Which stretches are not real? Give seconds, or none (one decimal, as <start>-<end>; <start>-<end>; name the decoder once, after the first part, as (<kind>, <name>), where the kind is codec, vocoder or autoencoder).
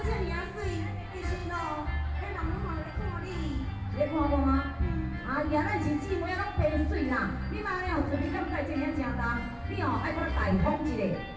7.9-8.5 (vocoder, Vocos); 10.2-10.8